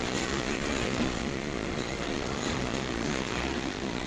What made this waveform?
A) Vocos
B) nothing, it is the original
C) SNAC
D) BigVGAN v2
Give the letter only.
A